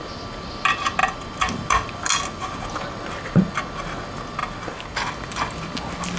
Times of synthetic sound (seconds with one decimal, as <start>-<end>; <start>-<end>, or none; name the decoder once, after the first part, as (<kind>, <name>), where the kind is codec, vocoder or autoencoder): none